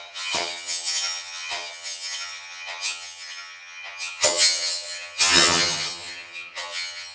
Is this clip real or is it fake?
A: fake